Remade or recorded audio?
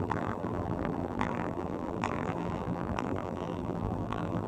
remade